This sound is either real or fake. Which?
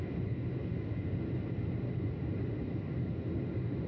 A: real